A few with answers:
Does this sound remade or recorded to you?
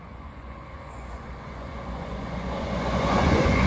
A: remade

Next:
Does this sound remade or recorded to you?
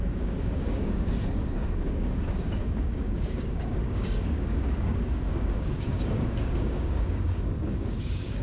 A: remade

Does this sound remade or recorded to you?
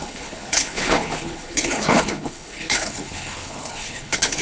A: remade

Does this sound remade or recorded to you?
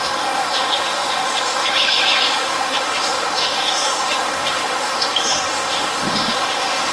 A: remade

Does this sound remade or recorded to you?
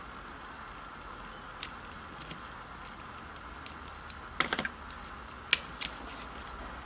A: recorded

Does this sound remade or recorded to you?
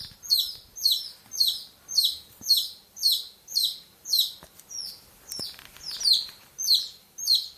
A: remade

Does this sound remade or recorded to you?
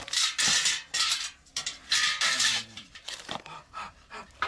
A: remade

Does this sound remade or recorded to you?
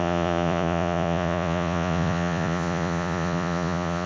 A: remade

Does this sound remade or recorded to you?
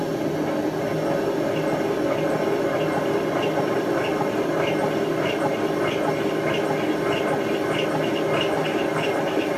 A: recorded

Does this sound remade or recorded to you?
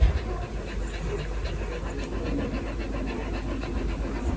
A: recorded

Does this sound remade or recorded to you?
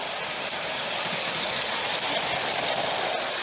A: recorded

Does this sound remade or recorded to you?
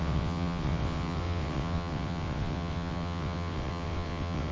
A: remade